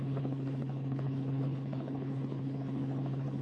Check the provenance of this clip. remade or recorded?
remade